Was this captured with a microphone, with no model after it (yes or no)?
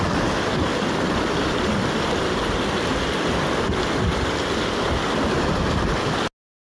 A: yes